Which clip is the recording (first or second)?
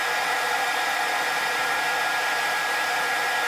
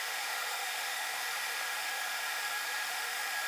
first